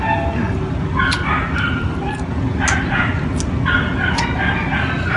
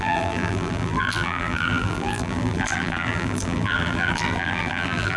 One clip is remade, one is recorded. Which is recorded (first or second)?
first